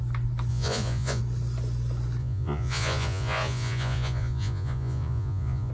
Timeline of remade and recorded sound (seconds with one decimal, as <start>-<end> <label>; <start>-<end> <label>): 0.0-0.5 recorded; 0.5-1.2 remade; 1.2-2.2 recorded; 2.2-5.7 remade